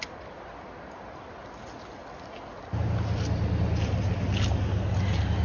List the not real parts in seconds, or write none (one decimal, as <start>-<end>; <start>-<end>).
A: none

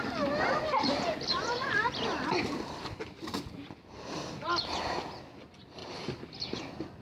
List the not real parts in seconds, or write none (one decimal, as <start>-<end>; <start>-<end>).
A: none

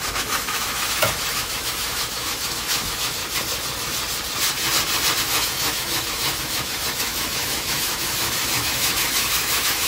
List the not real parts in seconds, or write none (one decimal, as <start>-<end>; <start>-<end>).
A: 0.0-3.2; 5.2-9.9

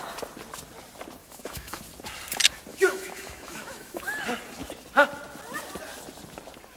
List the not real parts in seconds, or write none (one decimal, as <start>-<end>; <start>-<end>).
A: 1.2-1.8; 2.7-4.0

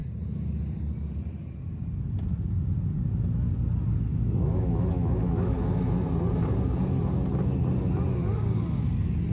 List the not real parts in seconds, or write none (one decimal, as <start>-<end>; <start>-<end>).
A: 4.1-5.9

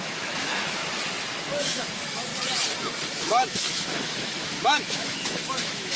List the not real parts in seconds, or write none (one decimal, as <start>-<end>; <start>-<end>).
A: 0.0-0.8; 1.4-2.3; 3.2-6.0